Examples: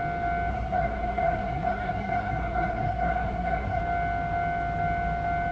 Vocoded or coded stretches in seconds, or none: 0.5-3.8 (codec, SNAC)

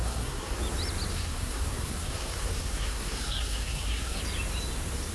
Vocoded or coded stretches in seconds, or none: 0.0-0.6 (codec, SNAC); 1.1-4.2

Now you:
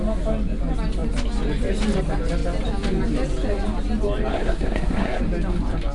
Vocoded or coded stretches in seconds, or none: 4.3-5.2 (codec, SNAC)

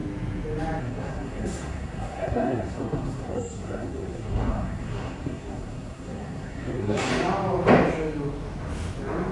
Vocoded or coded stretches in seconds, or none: 0.8-7.1 (codec, SNAC)

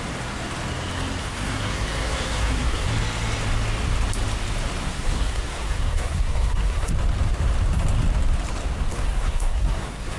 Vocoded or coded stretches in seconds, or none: 1.2-2.9 (codec, SNAC); 4.8-6.9; 8.9-10.2

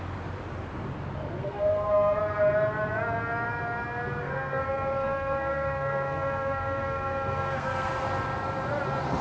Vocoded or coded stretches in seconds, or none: 1.4-2.2 (codec, SNAC); 4.2-7.9

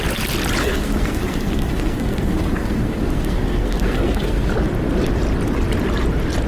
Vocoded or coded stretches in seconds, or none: 0.6-4.5 (codec, SNAC)

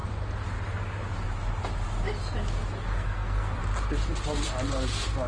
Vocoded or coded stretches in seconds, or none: 2.8-3.6 (codec, SNAC)